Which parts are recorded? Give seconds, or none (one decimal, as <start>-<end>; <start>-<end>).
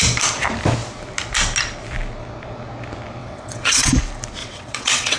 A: 0.0-3.2; 3.9-4.4